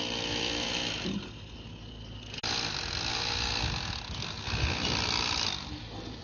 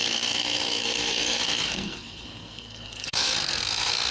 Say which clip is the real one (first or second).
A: first